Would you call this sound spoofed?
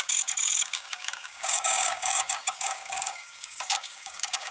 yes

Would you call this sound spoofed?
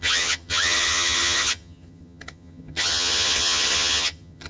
yes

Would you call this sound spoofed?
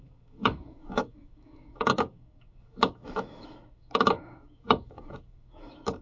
yes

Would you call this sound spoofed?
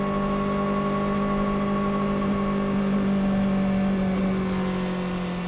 no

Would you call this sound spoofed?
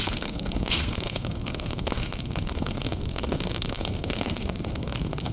yes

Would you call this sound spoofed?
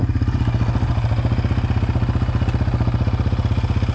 no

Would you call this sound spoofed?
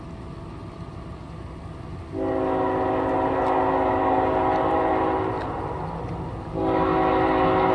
no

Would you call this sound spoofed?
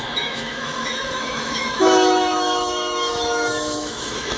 yes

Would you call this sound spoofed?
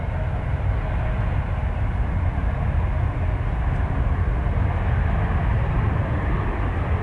no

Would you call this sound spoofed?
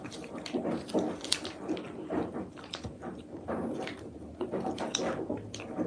no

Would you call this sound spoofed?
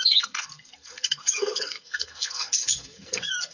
yes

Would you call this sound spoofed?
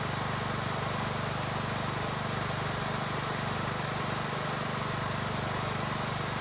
no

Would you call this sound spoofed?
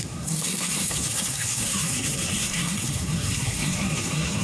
yes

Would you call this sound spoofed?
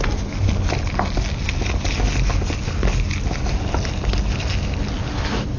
no